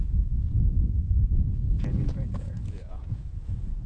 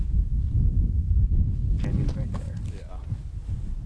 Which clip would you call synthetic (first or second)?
first